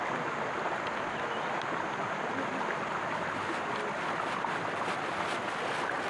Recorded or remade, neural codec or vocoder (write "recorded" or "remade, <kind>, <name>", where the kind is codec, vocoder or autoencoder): recorded